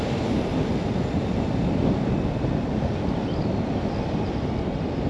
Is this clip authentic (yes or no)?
yes